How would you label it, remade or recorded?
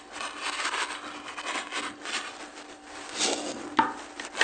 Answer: recorded